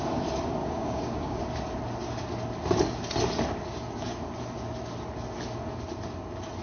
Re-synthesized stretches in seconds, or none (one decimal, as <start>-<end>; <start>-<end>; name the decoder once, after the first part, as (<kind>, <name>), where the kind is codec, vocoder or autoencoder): 0.6-1.4 (codec, DAC)